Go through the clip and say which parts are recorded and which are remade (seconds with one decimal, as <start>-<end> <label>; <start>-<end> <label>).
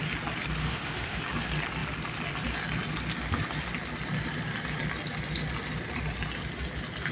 0.0-0.6 recorded; 0.6-1.2 remade; 1.2-7.1 recorded